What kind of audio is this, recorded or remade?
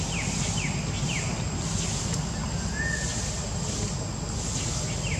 recorded